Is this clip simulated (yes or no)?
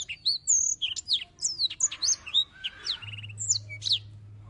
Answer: no